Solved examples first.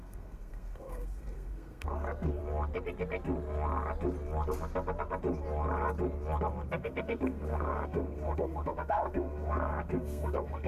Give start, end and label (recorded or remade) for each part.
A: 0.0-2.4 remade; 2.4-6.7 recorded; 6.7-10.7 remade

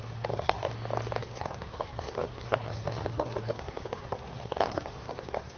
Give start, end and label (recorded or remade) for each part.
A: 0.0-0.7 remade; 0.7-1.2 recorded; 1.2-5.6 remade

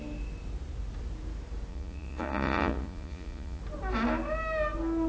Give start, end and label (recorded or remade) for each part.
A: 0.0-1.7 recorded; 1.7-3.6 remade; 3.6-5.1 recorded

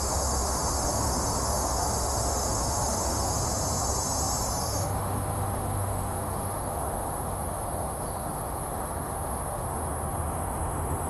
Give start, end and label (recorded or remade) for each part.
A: 0.0-3.4 remade; 3.4-4.6 recorded; 4.6-11.1 remade

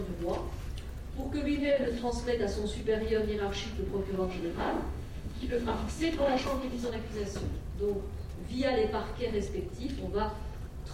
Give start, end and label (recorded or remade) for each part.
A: 0.0-1.6 recorded; 1.6-2.1 remade; 2.1-4.2 recorded; 4.2-6.9 remade; 6.9-10.9 recorded

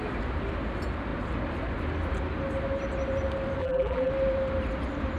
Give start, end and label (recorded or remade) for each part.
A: 0.0-3.6 recorded; 3.6-4.1 remade; 4.1-5.2 recorded

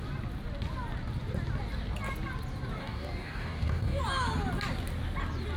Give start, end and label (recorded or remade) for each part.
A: 0.0-2.8 recorded; 2.8-4.0 remade; 4.0-5.6 recorded

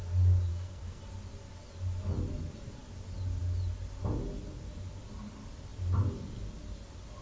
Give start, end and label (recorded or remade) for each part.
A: 0.0-0.5 recorded; 0.5-1.0 remade; 1.0-7.2 recorded